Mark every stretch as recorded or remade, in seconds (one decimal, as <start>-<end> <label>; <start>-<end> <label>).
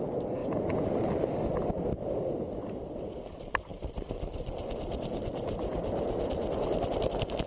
0.0-7.5 remade